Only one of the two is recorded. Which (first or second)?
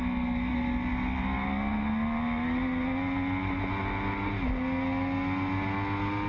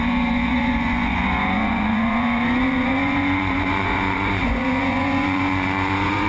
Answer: first